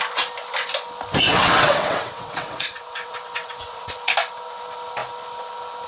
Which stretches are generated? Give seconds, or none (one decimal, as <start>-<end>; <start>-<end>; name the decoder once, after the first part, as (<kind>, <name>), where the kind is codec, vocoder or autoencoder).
1.3-4.1 (vocoder, WaveNeXt)